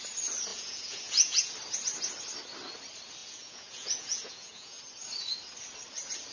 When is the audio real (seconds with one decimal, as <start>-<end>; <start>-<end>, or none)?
0.0-0.5; 1.5-3.2; 4.8-6.3